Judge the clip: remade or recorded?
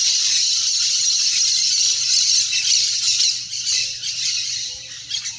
recorded